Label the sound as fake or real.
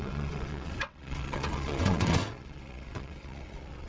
fake